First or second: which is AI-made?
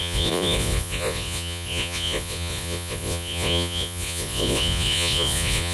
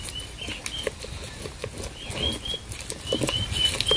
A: first